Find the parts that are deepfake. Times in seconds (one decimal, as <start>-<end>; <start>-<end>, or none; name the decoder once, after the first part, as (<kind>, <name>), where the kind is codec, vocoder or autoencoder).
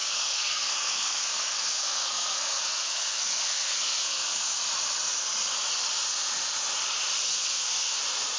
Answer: 0.0-4.6 (codec, SNAC); 7.3-8.0